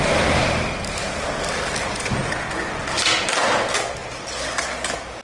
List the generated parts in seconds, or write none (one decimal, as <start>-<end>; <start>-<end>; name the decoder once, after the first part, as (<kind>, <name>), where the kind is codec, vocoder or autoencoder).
1.8-2.8 (vocoder, Vocos)